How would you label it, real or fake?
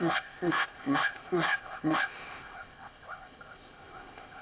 fake